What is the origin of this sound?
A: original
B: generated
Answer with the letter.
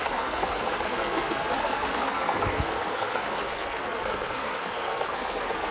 B